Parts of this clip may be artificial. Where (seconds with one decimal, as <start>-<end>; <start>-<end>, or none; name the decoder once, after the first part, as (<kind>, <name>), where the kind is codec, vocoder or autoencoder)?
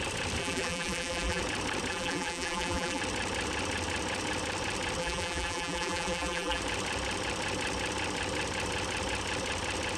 0.4-1.4 (vocoder, BigVGAN v2); 1.9-3.0; 5.0-6.6